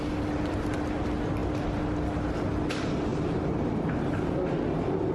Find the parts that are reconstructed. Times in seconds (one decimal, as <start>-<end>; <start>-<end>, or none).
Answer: 3.1-3.9